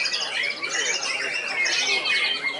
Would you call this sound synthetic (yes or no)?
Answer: no